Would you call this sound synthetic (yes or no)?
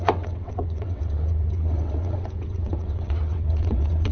yes